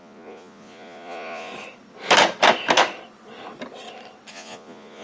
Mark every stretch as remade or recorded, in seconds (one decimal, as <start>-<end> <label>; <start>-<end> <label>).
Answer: 0.0-1.5 remade; 1.5-4.3 recorded; 4.3-5.0 remade

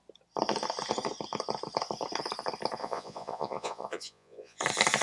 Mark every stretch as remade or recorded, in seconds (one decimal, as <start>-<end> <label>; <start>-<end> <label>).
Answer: 0.0-2.8 recorded; 2.8-4.6 remade; 4.6-5.0 recorded

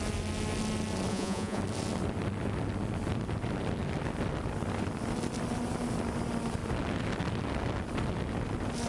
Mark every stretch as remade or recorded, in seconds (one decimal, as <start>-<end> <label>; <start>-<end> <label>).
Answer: 0.0-1.1 recorded; 1.1-1.6 remade; 1.6-8.9 recorded